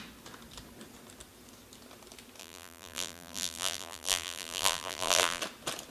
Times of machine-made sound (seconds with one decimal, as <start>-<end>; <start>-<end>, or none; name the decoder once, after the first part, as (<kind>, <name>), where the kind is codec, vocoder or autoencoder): 2.4-5.4 (vocoder, BigVGAN v2)